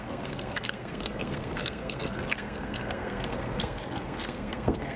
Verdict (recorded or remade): remade